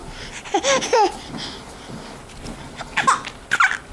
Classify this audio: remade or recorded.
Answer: recorded